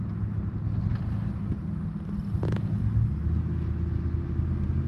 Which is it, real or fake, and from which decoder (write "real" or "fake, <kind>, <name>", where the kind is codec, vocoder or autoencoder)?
real